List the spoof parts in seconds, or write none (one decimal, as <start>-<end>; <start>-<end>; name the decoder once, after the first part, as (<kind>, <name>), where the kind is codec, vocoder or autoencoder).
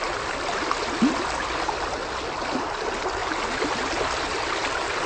none